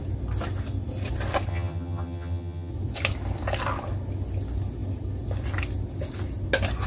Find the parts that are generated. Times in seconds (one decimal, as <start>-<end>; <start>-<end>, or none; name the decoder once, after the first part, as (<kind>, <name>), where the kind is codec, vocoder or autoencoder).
1.5-2.7 (vocoder, HiFi-GAN)